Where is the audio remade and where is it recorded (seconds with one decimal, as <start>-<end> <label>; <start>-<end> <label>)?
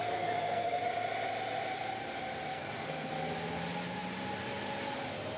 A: 0.0-0.8 remade; 0.8-2.5 recorded; 2.5-3.1 remade; 3.1-5.4 recorded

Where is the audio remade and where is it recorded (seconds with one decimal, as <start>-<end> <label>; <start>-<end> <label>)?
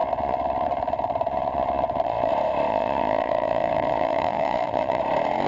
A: 0.0-2.3 remade; 2.3-2.7 recorded; 2.7-5.0 remade; 5.0-5.5 recorded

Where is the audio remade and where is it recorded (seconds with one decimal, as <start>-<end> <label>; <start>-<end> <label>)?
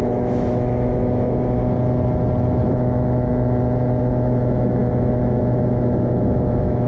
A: 0.0-1.6 remade; 1.6-2.6 recorded; 2.6-3.3 remade; 3.3-4.0 recorded; 4.0-6.9 remade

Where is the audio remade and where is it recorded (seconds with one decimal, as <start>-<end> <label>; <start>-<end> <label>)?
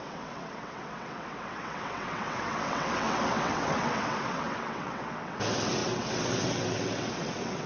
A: 0.0-7.7 remade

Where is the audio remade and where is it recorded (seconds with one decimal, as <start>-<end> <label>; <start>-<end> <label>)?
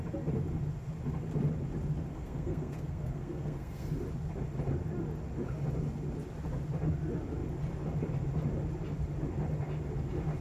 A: 0.0-2.1 recorded; 2.1-3.9 remade; 3.9-10.4 recorded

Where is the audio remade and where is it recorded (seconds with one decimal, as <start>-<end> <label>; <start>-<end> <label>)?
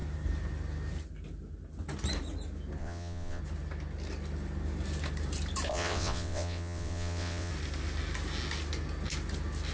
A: 0.0-2.8 recorded; 2.8-3.4 remade; 3.4-5.7 recorded; 5.7-7.5 remade; 7.5-9.7 recorded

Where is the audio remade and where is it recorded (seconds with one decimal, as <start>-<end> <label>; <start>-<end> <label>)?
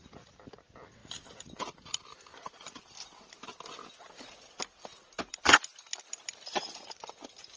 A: 0.0-7.6 recorded